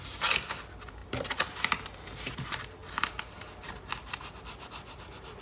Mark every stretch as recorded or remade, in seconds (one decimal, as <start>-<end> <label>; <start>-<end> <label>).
0.0-5.4 recorded